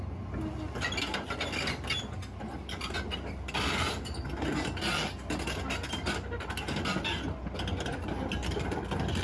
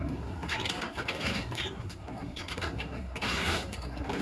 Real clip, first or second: first